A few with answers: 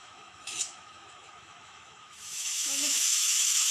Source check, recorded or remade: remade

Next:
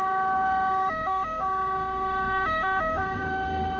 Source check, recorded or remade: remade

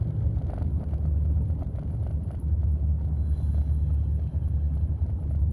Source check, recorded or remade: recorded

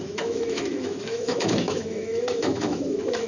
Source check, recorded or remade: remade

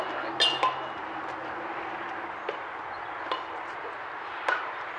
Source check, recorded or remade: recorded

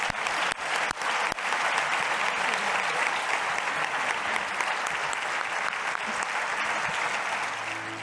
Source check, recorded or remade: recorded